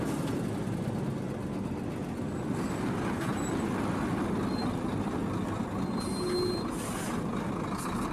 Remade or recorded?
recorded